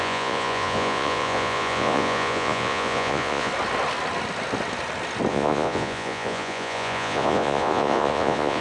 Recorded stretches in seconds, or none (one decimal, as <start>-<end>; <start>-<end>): 3.5-5.3